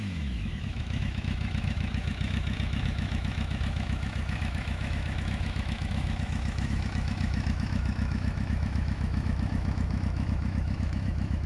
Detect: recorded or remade remade